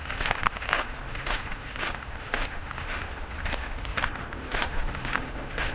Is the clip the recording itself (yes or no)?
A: no